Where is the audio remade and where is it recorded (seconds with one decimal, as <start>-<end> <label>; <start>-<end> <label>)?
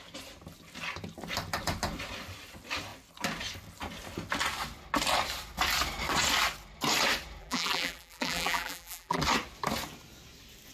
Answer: 0.0-7.4 recorded; 7.4-9.2 remade; 9.2-10.7 recorded